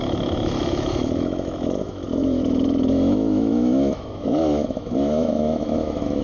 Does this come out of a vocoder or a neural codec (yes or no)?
yes